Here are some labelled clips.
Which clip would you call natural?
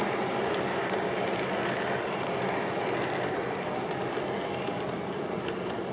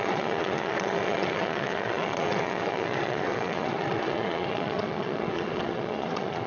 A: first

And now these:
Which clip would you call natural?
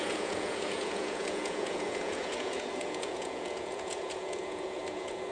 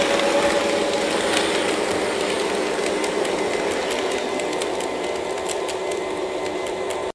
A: second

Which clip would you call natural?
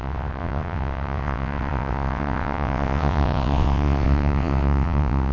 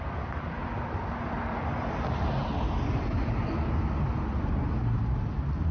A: second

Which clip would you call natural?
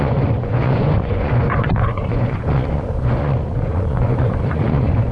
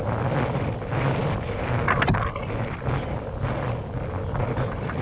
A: second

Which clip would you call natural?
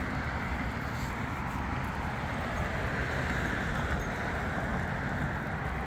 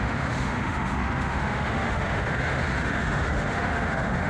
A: first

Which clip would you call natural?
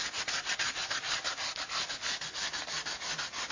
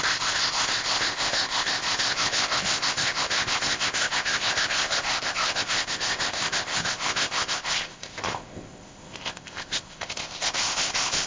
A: first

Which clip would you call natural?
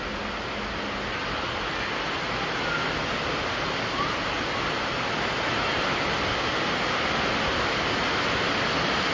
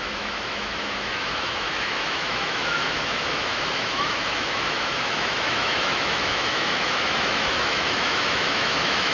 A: first